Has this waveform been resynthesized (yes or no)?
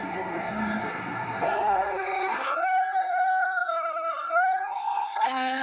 yes